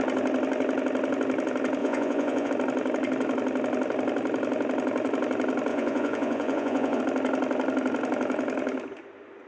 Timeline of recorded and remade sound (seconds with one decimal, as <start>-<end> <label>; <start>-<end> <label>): 0.0-1.8 recorded; 1.8-2.5 remade; 2.5-5.7 recorded; 5.7-7.0 remade; 7.0-9.5 recorded